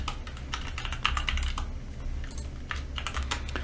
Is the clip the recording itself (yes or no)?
yes